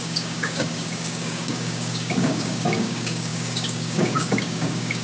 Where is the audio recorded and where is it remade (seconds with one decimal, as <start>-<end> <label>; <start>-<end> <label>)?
0.0-5.0 remade